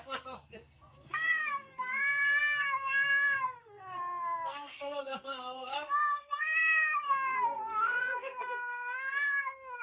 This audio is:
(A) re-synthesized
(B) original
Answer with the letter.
A